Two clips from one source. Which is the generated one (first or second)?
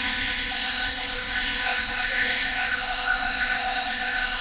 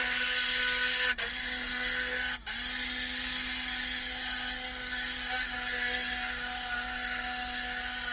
first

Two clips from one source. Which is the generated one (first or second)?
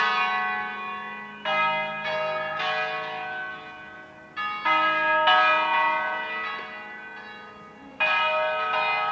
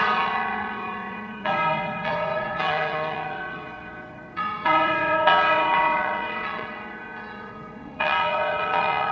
second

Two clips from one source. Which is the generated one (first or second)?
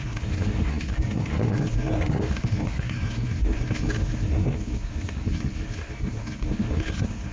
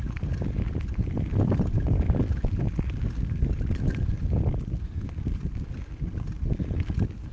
first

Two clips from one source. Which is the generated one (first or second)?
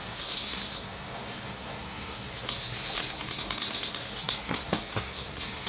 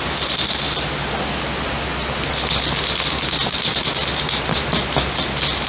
first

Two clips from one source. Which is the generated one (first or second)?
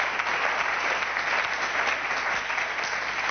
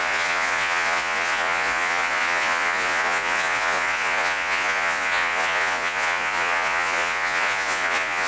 second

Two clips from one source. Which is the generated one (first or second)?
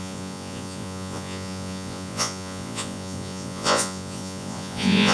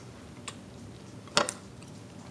first